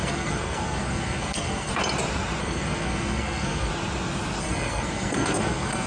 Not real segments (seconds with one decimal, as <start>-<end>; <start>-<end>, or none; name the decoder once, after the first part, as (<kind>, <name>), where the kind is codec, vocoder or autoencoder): 0.0-1.7 (codec, SNAC); 2.4-3.7; 4.4-5.9